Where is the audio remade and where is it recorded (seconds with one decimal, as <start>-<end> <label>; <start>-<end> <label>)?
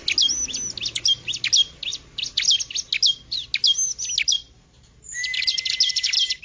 0.0-6.4 recorded